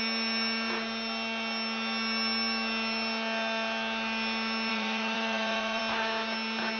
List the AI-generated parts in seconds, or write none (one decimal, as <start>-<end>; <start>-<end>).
4.7-5.8